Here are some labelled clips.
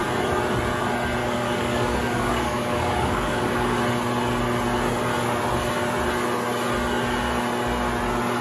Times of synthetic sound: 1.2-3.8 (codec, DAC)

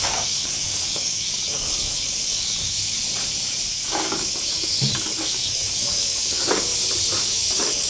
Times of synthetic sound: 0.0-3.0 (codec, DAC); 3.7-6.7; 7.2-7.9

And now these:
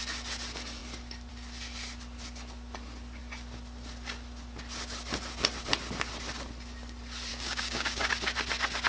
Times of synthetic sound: 7.3-8.1 (codec, DAC)

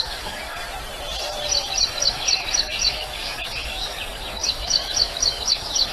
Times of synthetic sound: 0.0-0.6 (codec, DAC); 2.0-5.9